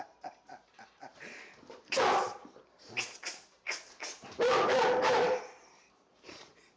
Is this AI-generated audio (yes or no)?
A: yes